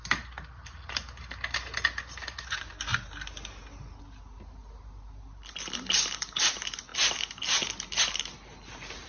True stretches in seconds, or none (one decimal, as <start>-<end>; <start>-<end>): 0.0-9.1